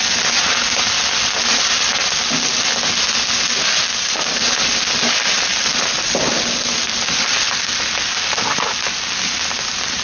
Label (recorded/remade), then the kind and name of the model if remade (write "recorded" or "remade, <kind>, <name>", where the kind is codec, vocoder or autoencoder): recorded